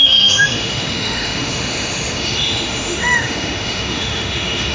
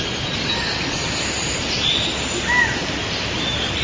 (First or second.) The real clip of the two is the second